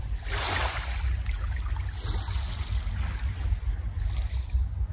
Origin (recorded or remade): recorded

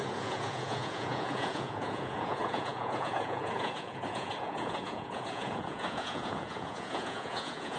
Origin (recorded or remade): remade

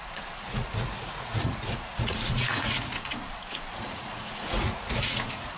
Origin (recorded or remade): remade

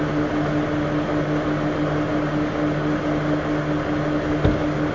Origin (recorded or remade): recorded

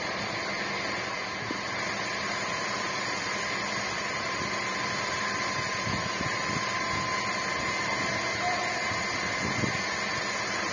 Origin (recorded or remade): recorded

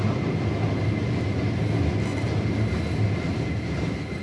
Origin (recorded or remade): recorded